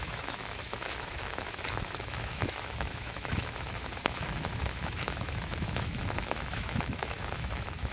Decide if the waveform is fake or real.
fake